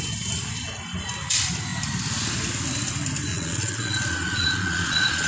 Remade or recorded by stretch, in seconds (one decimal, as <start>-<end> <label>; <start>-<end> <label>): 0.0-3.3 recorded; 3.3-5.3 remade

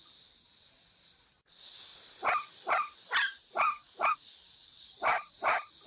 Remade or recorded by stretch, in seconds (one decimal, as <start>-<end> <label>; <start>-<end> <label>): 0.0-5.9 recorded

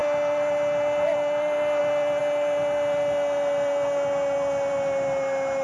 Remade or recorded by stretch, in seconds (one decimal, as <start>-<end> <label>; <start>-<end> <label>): 0.0-5.6 recorded

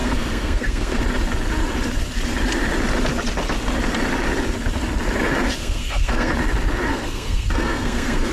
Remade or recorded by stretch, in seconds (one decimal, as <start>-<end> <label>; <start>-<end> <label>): 0.0-1.0 remade; 1.0-5.6 recorded; 5.6-6.3 remade; 6.3-6.9 recorded; 6.9-8.3 remade

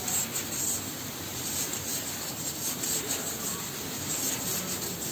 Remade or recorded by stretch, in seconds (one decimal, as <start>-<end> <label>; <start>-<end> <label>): 0.0-1.3 recorded; 1.3-4.4 remade; 4.4-5.1 recorded

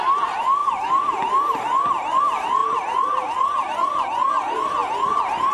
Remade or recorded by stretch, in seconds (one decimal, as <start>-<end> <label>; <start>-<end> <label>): 0.0-5.5 recorded

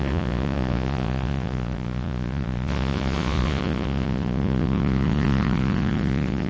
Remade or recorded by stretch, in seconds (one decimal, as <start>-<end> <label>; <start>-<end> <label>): 0.0-6.5 remade